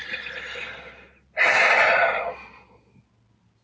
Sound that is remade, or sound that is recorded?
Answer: recorded